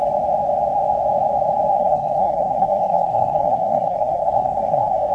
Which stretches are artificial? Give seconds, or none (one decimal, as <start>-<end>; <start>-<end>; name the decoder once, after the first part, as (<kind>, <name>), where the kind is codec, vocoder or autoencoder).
1.7-5.1 (codec, SNAC)